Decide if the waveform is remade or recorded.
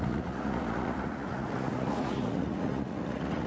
remade